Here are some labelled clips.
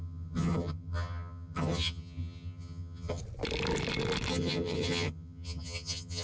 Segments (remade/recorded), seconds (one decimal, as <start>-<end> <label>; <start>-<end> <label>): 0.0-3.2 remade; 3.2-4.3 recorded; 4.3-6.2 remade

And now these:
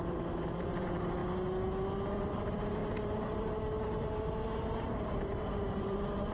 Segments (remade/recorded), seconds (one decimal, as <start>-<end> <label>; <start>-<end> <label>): 0.0-1.2 remade; 1.2-2.2 recorded; 2.2-6.3 remade

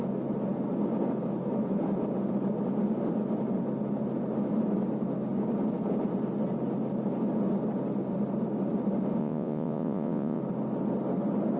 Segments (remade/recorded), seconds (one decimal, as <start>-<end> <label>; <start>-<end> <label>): 0.0-9.2 recorded; 9.2-10.4 remade; 10.4-11.6 recorded

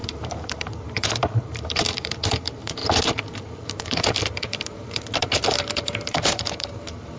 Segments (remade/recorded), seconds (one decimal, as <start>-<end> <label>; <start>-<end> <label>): 0.0-2.8 remade; 2.8-3.4 recorded; 3.4-7.2 remade

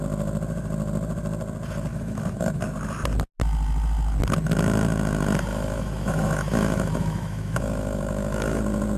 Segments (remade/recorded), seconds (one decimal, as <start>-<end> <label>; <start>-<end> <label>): 0.0-1.9 recorded; 1.9-2.6 remade; 2.6-5.5 recorded; 5.5-8.6 remade; 8.6-9.0 recorded

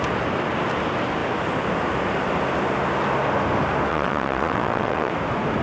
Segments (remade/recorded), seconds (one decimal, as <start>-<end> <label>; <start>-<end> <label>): 0.0-3.9 recorded; 3.9-5.1 remade; 5.1-5.6 recorded

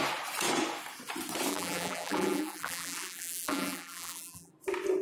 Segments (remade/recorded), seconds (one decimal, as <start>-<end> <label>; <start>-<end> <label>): 0.0-1.5 recorded; 1.5-4.5 remade; 4.5-5.0 recorded

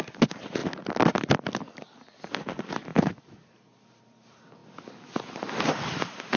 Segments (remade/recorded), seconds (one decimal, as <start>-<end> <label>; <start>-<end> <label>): 0.0-6.4 recorded